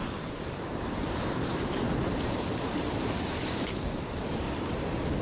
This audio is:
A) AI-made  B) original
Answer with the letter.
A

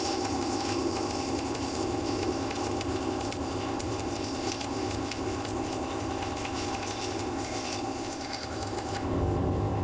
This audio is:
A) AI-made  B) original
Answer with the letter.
A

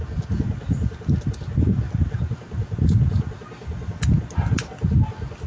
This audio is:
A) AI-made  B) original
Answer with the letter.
B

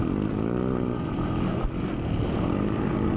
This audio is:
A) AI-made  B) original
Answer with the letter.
B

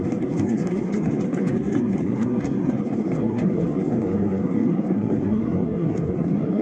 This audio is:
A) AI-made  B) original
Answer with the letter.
A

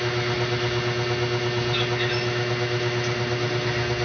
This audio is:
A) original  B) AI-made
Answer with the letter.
A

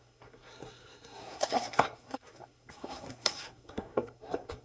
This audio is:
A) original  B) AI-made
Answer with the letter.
B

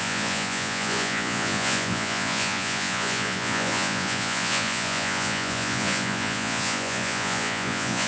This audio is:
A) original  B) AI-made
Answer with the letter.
B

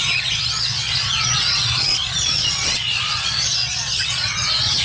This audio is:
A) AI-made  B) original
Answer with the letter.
A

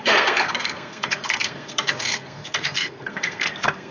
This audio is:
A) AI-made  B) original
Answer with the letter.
A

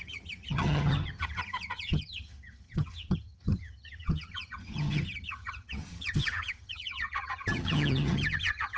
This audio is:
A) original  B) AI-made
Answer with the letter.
B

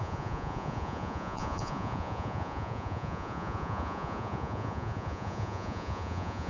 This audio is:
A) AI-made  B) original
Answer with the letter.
A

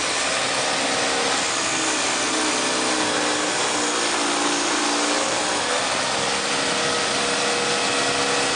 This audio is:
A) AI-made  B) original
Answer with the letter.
B